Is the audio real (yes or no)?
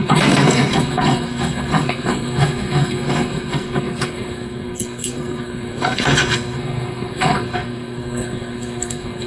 no